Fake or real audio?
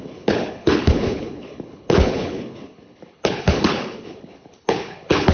fake